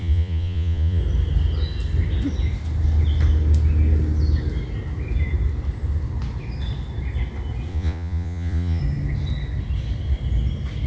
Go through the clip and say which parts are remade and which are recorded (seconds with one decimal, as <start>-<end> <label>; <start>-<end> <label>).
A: 0.0-1.0 remade; 1.0-7.7 recorded; 7.7-8.8 remade; 8.8-10.9 recorded

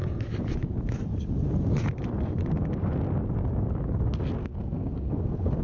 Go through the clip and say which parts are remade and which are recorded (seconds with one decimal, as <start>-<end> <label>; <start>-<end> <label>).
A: 0.0-4.4 recorded; 4.4-5.6 remade

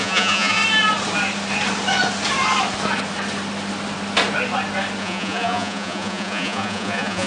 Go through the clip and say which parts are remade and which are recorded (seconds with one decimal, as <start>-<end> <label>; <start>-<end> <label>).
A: 0.0-0.6 remade; 0.6-5.0 recorded; 5.0-7.3 remade

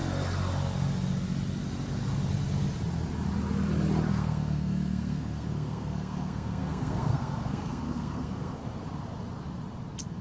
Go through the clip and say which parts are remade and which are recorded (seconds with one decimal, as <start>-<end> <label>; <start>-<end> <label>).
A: 0.0-4.1 recorded; 4.1-8.6 remade; 8.6-10.2 recorded